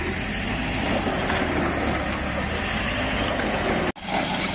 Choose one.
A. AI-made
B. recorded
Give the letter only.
B